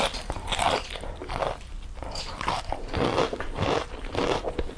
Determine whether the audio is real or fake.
real